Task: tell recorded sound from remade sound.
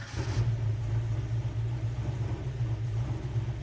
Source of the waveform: recorded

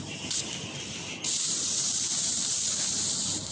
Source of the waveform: recorded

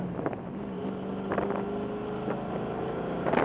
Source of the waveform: recorded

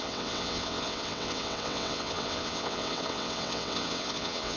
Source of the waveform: remade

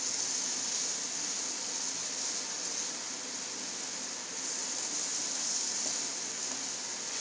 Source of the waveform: recorded